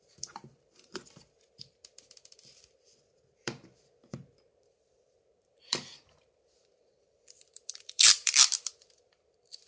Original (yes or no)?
no